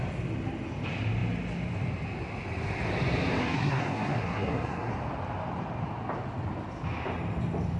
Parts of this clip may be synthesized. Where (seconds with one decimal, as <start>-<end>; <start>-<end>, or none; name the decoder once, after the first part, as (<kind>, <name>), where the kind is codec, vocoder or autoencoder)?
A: 3.4-4.9 (codec, SNAC)